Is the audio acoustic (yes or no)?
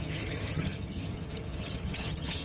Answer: no